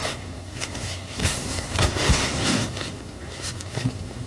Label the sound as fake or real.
fake